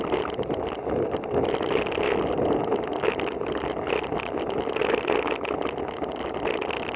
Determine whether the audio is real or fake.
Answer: real